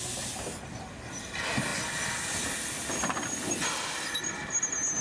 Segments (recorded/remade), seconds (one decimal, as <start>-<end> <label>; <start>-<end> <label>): 0.0-5.0 recorded